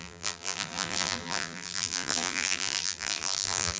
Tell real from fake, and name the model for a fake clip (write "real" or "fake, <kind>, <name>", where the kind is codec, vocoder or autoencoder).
fake, vocoder, BigVGAN v2